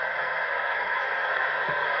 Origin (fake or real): fake